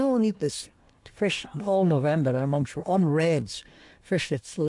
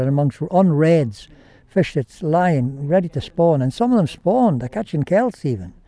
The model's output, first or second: first